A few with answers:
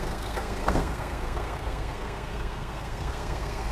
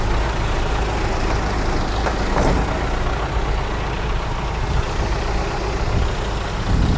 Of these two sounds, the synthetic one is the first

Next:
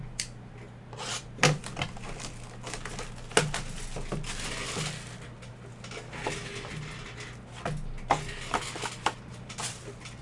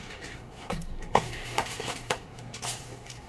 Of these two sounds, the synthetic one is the second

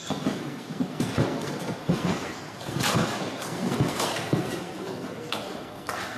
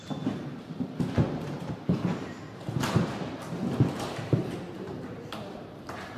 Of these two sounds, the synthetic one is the first